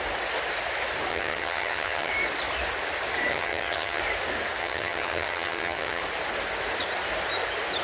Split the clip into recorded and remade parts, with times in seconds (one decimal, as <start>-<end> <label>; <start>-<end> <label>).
0.0-1.1 recorded; 1.1-2.1 remade; 2.1-3.3 recorded; 3.3-4.0 remade; 4.0-4.6 recorded; 4.6-6.0 remade; 6.0-7.8 recorded